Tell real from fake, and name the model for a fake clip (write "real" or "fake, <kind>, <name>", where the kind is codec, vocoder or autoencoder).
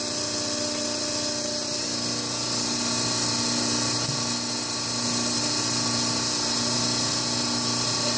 real